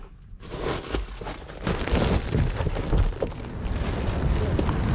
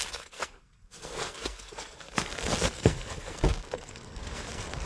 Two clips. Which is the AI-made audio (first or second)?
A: second